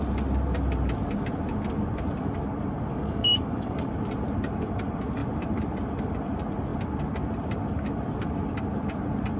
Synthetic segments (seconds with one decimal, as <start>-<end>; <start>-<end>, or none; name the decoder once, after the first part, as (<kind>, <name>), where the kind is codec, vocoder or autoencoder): 2.9-3.9 (codec, DAC)